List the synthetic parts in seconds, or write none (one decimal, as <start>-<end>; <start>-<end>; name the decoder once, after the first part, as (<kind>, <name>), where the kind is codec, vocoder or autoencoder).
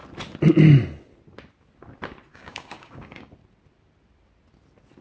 2.3-3.3 (codec, DAC)